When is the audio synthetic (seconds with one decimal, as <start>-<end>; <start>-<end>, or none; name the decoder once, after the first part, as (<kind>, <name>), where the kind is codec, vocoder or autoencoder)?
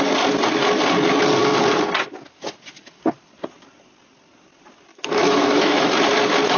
4.9-5.9 (autoencoder, DAC-VAE)